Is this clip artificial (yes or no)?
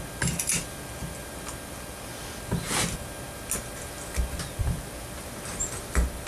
no